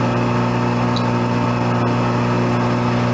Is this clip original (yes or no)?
yes